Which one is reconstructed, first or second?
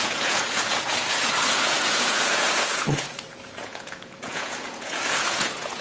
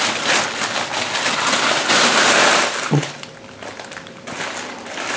first